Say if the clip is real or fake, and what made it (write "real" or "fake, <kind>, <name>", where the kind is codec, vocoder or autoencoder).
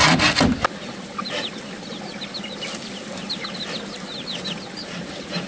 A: real